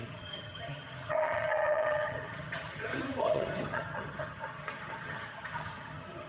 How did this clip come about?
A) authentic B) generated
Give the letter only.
B